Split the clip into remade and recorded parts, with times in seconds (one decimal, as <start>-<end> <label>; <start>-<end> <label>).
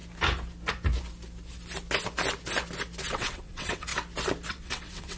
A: 0.0-3.1 recorded; 3.1-3.9 remade; 3.9-4.5 recorded; 4.5-5.2 remade